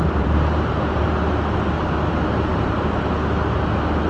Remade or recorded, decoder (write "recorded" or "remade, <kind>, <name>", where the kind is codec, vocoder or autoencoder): recorded